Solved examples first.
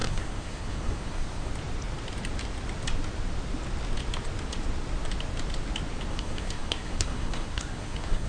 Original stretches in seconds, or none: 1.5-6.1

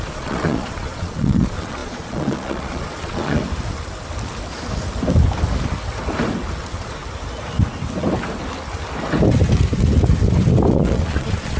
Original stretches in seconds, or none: 3.4-6.6; 7.0-10.7

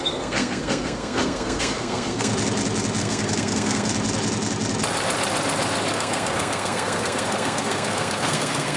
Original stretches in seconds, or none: 2.3-3.0; 3.9-5.9